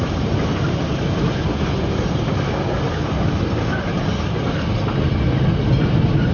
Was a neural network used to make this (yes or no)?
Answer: no